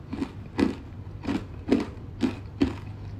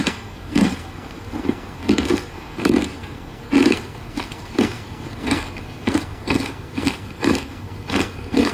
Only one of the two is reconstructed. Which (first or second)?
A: second